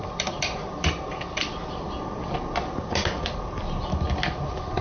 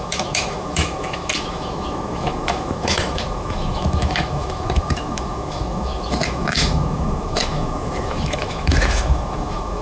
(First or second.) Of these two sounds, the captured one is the first